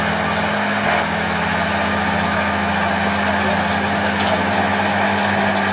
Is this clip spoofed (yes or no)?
no